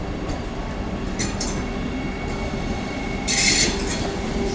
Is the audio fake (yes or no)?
no